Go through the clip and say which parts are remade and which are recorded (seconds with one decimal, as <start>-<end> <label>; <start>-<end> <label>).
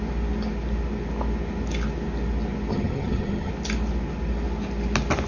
0.0-2.7 recorded; 2.7-3.5 remade; 3.5-5.3 recorded